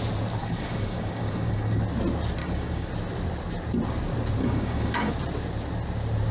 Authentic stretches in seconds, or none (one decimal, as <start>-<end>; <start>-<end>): 0.0-0.4; 1.8-2.4; 2.9-4.4; 5.1-6.3